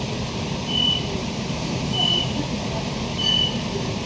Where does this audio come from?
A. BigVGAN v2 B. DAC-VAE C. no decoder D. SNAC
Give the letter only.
A